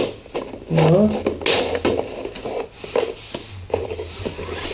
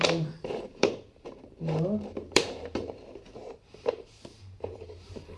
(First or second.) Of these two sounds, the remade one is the second